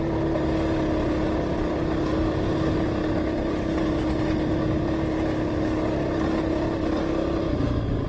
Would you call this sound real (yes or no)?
yes